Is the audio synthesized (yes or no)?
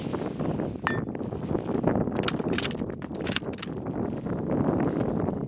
no